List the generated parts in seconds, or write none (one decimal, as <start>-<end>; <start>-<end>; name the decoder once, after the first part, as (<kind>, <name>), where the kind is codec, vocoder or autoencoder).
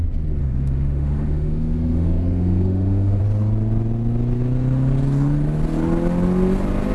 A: 0.4-3.2 (autoencoder, DAC-VAE)